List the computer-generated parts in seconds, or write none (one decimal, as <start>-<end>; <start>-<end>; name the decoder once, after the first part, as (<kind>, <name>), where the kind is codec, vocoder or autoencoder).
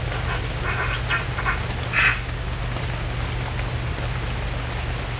2.1-2.6 (codec, DAC)